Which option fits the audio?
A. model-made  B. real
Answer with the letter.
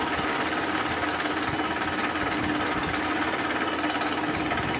B